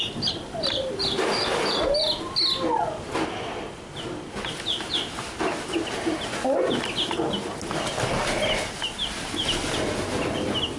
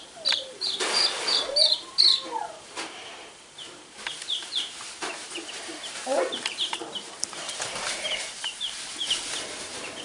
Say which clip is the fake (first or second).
second